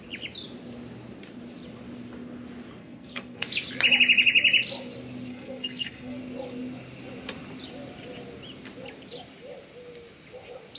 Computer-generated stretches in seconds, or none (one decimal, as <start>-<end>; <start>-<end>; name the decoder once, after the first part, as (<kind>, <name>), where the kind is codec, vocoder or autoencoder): 2.8-3.5 (codec, SNAC); 5.3-6.2